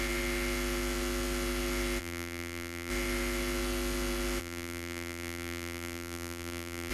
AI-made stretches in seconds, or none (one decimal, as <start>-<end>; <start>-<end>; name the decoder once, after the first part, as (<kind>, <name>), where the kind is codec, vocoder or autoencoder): 2.0-2.9 (vocoder, BigVGAN v2); 4.4-6.9